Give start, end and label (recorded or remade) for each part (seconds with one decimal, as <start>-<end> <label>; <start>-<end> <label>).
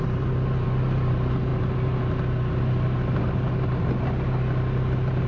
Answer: 0.0-5.3 recorded